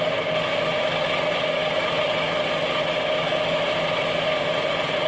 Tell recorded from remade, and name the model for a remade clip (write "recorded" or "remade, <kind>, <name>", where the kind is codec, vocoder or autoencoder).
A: recorded